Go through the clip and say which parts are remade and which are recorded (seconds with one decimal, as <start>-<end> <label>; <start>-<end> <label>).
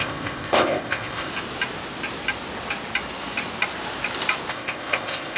0.0-1.3 remade; 1.3-4.5 recorded; 4.5-5.4 remade